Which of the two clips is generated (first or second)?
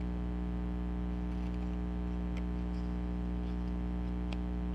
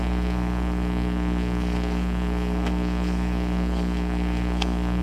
second